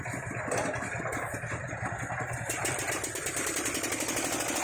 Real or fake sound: fake